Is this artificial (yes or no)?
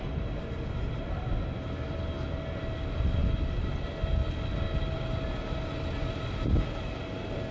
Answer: no